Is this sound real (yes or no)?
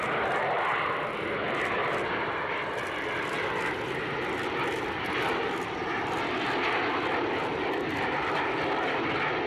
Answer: yes